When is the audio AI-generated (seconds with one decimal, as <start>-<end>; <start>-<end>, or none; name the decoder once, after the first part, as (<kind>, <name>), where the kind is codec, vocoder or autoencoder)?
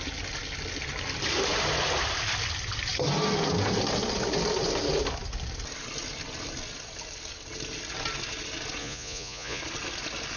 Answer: 8.8-9.6 (vocoder, Vocos)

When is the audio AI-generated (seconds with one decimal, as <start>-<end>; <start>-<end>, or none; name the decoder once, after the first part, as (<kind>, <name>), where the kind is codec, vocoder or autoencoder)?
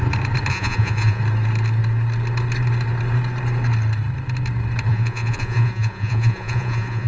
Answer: 0.5-1.2 (vocoder, Vocos); 4.9-7.1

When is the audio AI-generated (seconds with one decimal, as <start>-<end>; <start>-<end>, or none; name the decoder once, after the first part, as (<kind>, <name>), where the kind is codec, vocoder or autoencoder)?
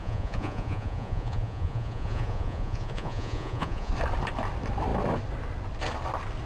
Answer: 0.0-3.9 (vocoder, Vocos)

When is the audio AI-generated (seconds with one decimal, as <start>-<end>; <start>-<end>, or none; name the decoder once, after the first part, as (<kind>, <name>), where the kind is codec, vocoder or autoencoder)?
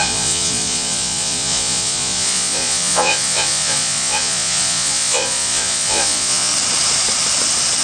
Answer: 0.0-6.5 (vocoder, Vocos)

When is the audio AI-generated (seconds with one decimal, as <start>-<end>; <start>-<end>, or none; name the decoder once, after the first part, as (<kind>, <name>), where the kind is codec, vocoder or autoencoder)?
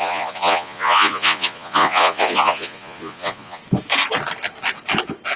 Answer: 0.0-3.6 (vocoder, Vocos)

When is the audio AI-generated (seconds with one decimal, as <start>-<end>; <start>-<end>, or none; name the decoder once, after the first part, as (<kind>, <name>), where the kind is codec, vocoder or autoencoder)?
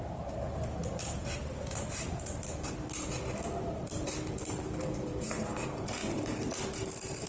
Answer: none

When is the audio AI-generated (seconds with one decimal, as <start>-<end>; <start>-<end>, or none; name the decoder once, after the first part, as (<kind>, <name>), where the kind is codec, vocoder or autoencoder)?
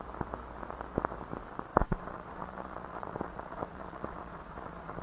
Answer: 1.7-5.0 (vocoder, Vocos)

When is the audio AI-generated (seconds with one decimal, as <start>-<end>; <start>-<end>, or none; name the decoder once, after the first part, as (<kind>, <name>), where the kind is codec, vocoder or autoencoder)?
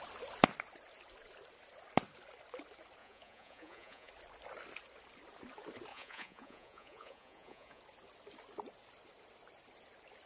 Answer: 3.0-4.1 (vocoder, Vocos); 5.9-7.8